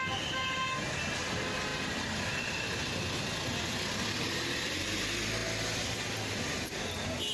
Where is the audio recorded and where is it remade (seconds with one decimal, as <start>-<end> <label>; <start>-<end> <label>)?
0.0-7.3 recorded